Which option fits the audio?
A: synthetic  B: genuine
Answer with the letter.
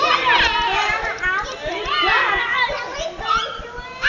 B